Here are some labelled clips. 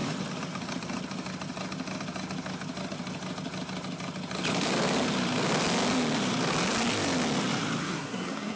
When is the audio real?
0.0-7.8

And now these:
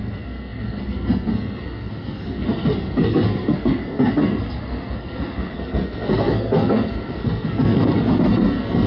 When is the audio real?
none

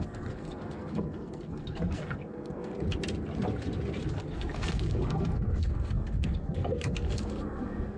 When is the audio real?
2.7-4.1

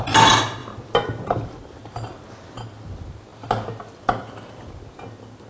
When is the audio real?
0.0-5.5

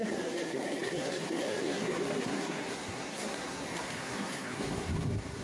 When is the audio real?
none